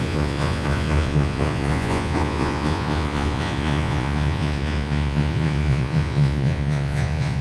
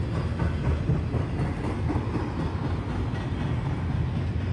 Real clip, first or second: second